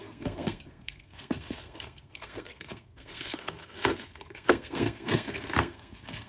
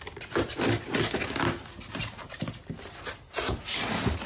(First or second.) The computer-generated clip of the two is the first